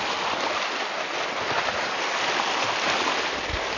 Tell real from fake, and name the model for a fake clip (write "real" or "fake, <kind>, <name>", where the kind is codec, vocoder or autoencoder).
real